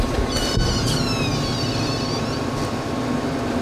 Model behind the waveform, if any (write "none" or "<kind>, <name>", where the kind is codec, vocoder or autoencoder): none